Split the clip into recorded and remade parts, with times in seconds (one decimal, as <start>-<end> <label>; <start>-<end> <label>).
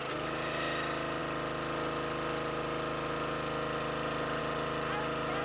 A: 0.0-5.4 recorded